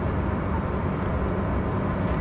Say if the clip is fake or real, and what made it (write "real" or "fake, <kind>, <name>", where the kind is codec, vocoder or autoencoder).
real